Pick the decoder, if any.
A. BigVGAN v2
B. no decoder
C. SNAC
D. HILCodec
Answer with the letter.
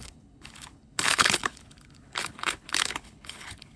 D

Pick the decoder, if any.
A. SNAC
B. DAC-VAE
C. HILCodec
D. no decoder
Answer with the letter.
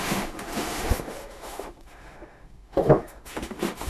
B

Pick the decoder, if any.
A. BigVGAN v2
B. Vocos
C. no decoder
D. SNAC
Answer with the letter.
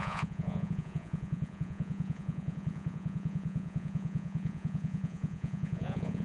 B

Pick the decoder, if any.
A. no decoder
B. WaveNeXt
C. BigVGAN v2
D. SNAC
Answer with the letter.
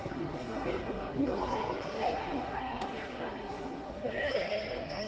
D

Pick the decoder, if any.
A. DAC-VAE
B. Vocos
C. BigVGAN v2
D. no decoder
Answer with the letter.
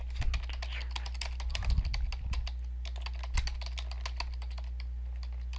D